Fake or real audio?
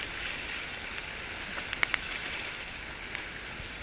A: real